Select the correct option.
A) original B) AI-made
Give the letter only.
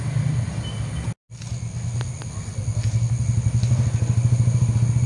A